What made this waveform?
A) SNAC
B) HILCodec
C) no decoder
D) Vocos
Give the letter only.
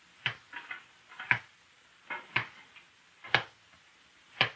C